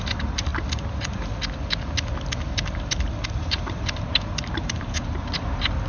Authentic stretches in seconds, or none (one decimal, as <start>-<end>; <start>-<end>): 0.5-3.2